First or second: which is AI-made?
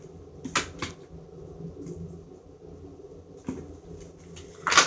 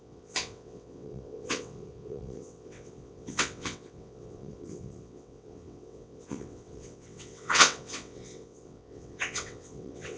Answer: second